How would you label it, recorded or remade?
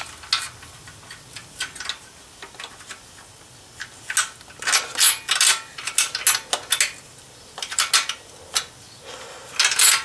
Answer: recorded